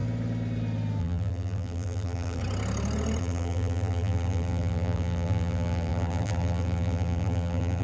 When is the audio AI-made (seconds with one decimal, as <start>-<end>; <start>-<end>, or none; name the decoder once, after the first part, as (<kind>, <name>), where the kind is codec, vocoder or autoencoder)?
1.0-2.4 (vocoder, BigVGAN v2); 3.2-7.8

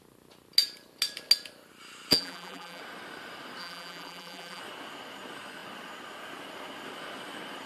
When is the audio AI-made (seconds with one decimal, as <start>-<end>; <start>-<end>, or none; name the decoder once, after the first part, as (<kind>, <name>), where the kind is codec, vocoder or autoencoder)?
2.1-2.8 (vocoder, BigVGAN v2); 3.6-4.6